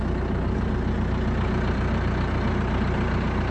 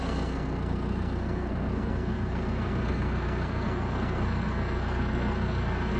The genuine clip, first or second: first